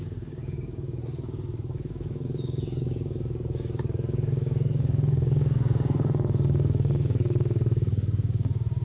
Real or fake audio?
fake